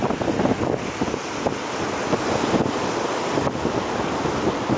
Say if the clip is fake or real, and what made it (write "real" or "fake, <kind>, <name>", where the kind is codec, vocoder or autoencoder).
real